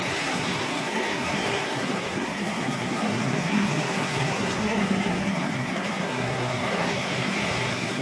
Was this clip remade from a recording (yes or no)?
yes